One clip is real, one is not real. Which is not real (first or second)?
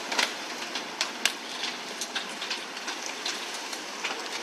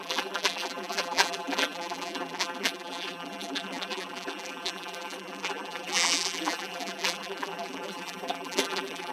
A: second